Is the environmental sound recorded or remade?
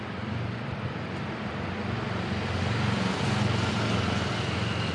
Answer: recorded